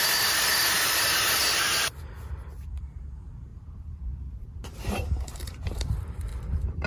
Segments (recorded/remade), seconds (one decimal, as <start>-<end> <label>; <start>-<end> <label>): 0.0-1.4 remade; 1.4-2.8 recorded; 2.8-6.3 remade; 6.3-6.9 recorded